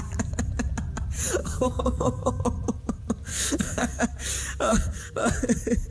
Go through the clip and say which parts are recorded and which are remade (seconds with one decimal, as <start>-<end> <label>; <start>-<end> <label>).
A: 0.0-1.4 recorded; 1.4-2.4 remade; 2.4-3.3 recorded; 3.3-4.0 remade; 4.0-4.7 recorded; 4.7-5.2 remade; 5.2-5.9 recorded